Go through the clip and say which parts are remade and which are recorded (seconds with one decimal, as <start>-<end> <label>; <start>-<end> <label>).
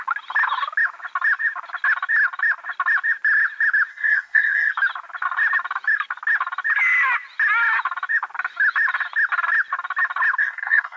0.0-3.9 recorded; 3.9-4.7 remade; 4.7-10.4 recorded; 10.4-11.0 remade